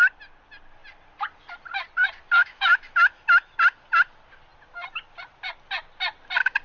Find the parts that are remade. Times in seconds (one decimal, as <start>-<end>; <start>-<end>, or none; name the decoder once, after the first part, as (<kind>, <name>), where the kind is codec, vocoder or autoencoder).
2.4-3.5 (autoencoder, DAC-VAE)